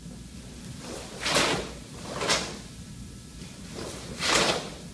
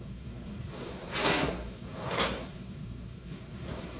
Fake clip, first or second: second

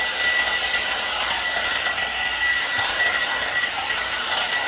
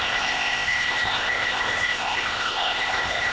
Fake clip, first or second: second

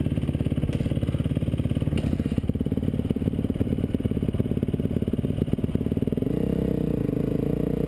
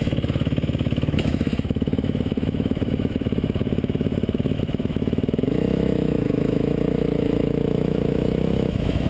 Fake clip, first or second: second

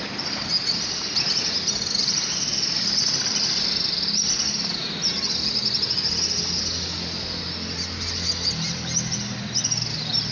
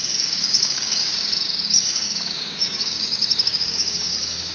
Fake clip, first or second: second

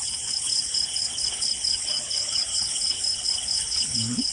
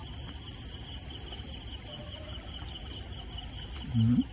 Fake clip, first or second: first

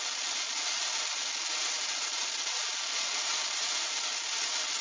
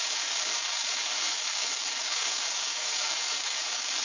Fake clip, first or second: second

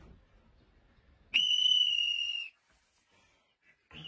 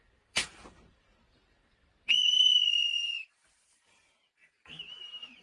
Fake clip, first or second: second